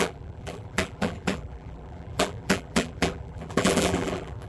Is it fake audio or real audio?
fake